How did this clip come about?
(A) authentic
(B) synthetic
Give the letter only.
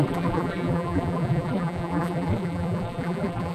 B